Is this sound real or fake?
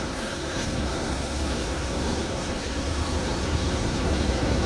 fake